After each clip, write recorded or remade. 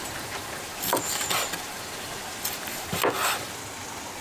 recorded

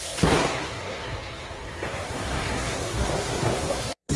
remade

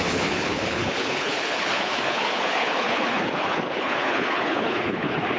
remade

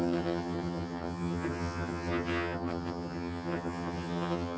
remade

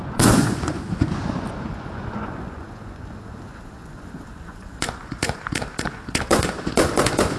remade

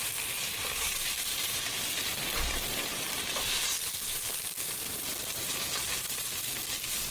recorded